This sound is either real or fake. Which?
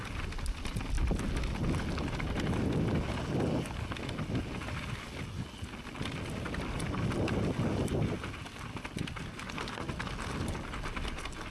real